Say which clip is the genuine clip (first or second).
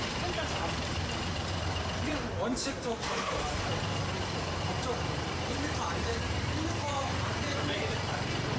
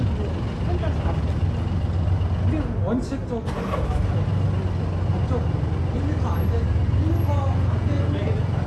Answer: second